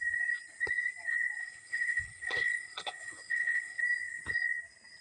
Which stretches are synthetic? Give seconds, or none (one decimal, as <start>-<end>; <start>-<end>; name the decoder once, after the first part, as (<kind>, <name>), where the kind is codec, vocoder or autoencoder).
1.4-3.8 (codec, HILCodec)